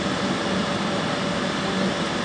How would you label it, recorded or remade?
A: recorded